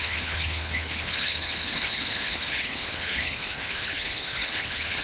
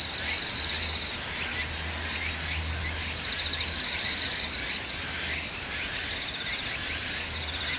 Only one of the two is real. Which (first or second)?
second